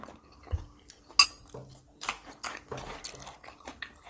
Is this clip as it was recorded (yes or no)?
yes